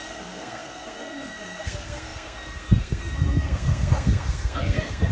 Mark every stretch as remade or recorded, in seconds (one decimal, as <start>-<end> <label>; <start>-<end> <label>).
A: 0.0-5.1 remade